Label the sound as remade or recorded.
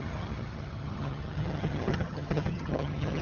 remade